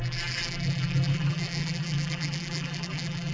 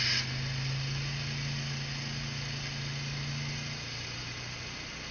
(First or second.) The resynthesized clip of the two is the first